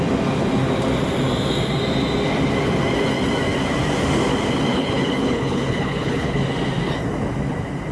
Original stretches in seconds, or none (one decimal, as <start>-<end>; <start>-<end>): 0.0-4.7; 6.4-7.9